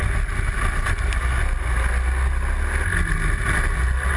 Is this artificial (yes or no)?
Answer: no